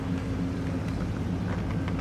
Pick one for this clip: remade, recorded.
recorded